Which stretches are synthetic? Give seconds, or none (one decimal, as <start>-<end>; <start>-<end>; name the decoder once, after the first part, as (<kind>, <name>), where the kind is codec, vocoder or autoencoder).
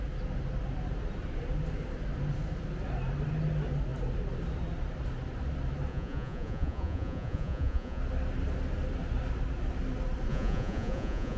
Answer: 5.9-8.0 (vocoder, Vocos); 10.3-11.4